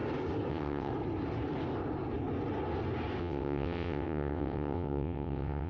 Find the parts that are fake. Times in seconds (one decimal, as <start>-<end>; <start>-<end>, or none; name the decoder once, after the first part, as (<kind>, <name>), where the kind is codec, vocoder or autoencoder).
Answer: 0.5-0.9 (vocoder, WaveNeXt); 3.2-5.7